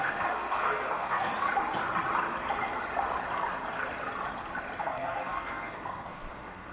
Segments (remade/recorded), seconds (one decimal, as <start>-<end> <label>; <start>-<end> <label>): 0.0-1.3 remade; 1.3-4.8 recorded; 4.8-6.7 remade